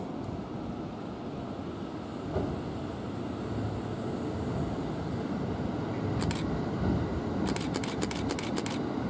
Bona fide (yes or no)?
yes